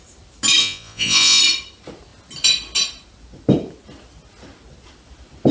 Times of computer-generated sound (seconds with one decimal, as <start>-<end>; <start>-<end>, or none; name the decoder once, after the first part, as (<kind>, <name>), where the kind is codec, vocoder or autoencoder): 0.6-1.4 (vocoder, Vocos)